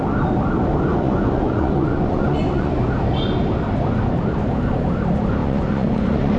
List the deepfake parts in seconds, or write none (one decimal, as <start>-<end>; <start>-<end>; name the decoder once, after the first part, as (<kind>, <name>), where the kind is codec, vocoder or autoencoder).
0.9-2.7 (vocoder, Vocos); 5.4-6.4